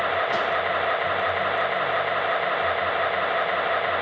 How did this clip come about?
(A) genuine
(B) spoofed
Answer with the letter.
A